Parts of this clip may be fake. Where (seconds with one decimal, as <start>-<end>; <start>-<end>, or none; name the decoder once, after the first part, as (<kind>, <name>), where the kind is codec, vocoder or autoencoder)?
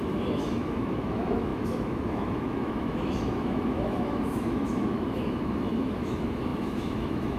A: 0.0-7.4 (autoencoder, DAC-VAE)